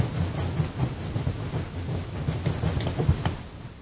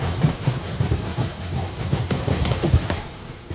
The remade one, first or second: second